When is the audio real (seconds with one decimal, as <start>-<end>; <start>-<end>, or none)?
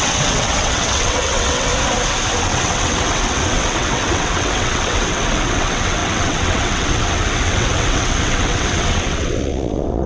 1.7-2.4